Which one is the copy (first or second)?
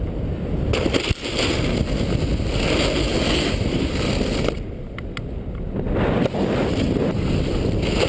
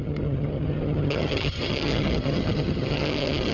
second